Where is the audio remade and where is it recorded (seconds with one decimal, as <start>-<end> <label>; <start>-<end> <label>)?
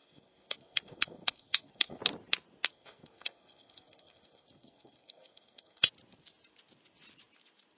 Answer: 0.0-2.0 remade; 2.0-2.7 recorded; 2.7-5.9 remade; 5.9-7.8 recorded